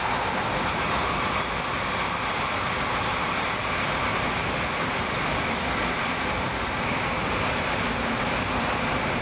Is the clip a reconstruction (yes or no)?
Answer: no